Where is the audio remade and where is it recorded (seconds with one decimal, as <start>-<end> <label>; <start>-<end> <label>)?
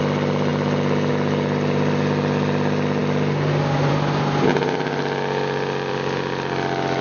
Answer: 0.0-7.0 recorded